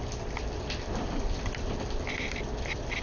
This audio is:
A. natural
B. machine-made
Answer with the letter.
A